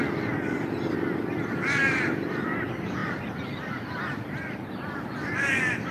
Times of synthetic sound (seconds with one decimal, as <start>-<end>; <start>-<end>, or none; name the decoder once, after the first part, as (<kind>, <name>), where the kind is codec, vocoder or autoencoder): 0.9-5.9 (vocoder, BigVGAN v2)